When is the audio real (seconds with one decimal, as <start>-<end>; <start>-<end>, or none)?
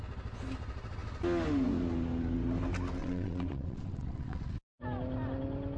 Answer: 0.0-3.0; 4.5-5.8